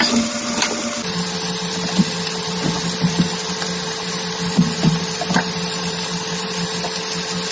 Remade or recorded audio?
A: recorded